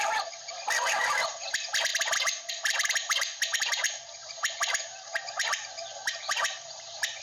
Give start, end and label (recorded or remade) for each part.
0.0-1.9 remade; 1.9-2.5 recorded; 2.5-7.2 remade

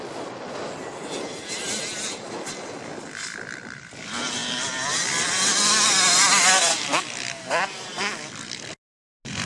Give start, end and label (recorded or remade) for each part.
0.0-9.4 recorded

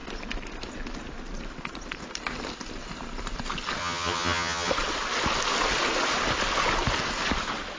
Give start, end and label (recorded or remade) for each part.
0.0-3.8 recorded; 3.8-4.7 remade; 4.7-7.8 recorded

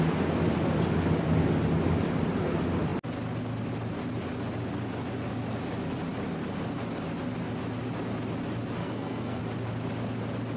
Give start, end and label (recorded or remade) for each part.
0.0-8.8 recorded; 8.8-9.4 remade; 9.4-10.6 recorded

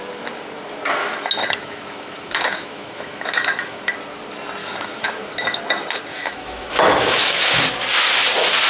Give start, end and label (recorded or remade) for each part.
0.0-1.0 recorded; 1.0-3.8 remade; 3.8-4.6 recorded; 4.6-5.6 remade; 5.6-6.1 recorded; 6.1-7.6 remade; 7.6-8.7 recorded